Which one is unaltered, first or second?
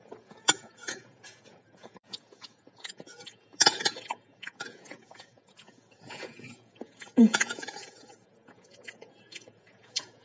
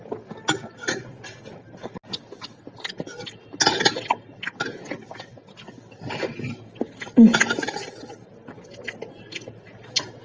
second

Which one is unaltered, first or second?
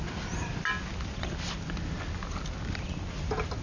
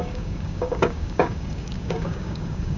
first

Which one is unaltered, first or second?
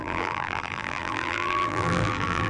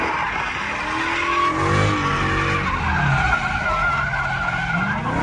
second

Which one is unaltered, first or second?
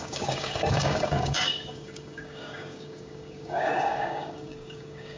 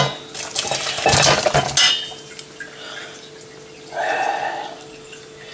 second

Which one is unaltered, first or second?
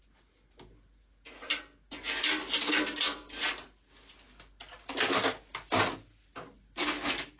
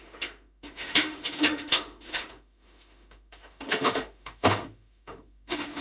first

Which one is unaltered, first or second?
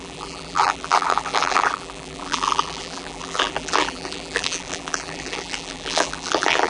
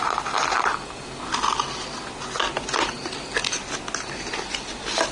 second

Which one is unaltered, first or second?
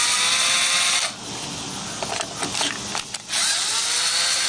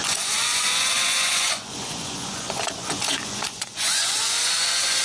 first